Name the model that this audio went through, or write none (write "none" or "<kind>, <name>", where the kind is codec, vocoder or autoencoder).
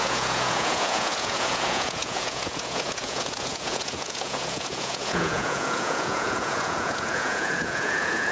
vocoder, Vocos